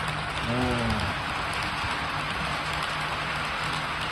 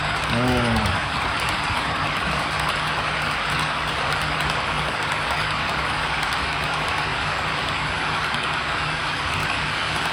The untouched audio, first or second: first